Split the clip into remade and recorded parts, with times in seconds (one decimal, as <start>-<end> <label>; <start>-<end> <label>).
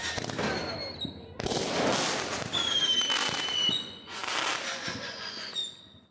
0.0-3.7 recorded; 3.7-4.2 remade; 4.2-4.7 recorded; 4.7-5.6 remade; 5.6-6.1 recorded